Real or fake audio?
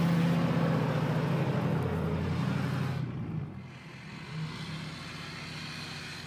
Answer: real